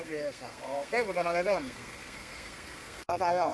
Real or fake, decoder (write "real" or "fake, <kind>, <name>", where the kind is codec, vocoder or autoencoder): fake, codec, SNAC